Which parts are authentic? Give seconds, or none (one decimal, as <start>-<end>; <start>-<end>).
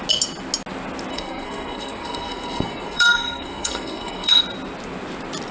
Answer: 0.0-1.1; 4.4-5.5